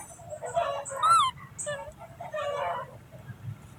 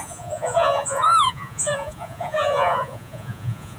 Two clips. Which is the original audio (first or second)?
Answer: first